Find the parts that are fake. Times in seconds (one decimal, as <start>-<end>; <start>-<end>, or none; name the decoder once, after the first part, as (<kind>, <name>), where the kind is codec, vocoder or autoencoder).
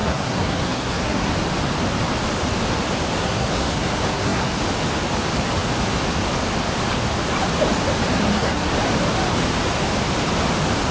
0.0-1.3 (codec, SNAC); 3.2-4.6; 8.1-8.7